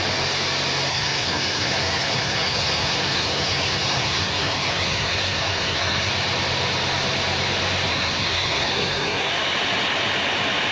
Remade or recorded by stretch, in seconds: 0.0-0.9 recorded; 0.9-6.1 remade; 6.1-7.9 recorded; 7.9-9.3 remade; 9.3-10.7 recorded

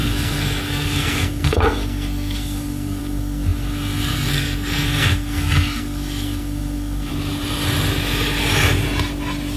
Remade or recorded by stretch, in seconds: 0.0-7.1 remade; 7.1-9.6 recorded

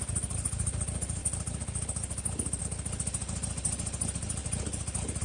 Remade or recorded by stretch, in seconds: 0.0-5.2 recorded

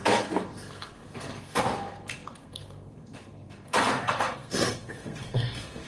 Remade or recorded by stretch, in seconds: 0.0-5.9 remade

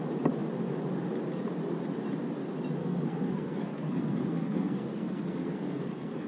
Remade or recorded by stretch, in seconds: 0.0-2.8 recorded; 2.8-6.3 remade